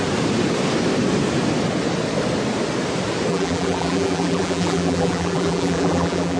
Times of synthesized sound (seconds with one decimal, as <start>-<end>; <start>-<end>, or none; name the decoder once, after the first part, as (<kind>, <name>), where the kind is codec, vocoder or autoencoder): 3.3-6.4 (vocoder, BigVGAN v2)